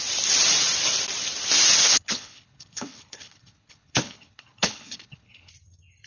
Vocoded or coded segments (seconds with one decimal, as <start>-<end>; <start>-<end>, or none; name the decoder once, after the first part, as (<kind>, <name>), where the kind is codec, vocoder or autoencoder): 1.8-5.5 (codec, HILCodec)